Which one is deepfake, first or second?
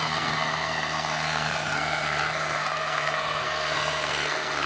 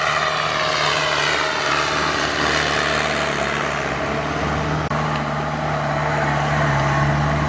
first